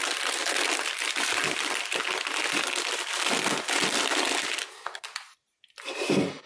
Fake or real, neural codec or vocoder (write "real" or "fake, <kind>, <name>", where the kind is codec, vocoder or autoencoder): real